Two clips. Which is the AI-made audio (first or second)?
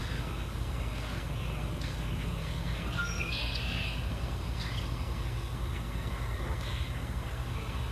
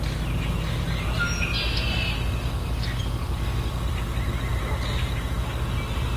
first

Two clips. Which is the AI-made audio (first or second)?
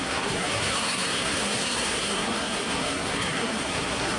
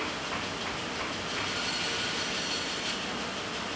first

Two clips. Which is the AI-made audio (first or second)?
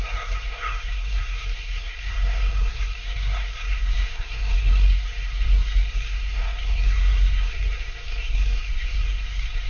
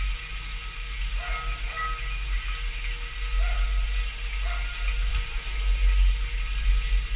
first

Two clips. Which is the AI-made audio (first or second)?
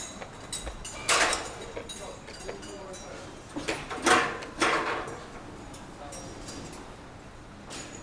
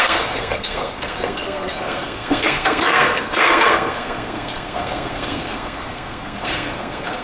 second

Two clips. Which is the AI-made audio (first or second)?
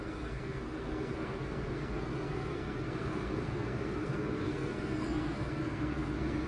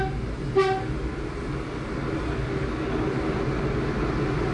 first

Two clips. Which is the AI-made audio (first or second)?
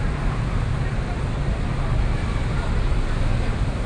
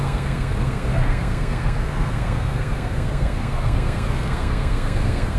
second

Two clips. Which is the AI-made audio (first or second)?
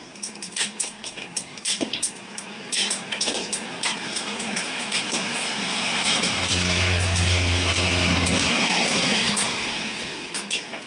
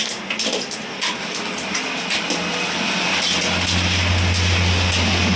first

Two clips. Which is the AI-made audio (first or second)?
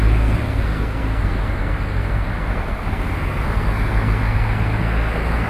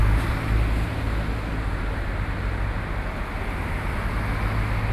first